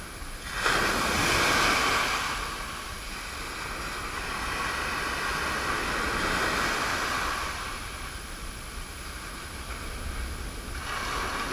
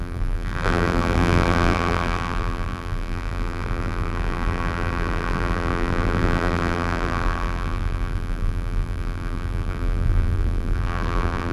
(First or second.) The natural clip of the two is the first